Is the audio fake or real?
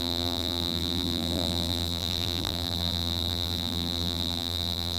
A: fake